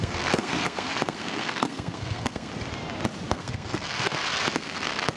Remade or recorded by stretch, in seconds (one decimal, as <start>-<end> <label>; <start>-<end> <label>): 0.0-2.5 remade; 2.5-3.3 recorded; 3.3-5.2 remade